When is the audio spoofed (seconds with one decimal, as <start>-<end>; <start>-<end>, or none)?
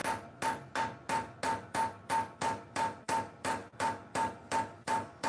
1.7-5.3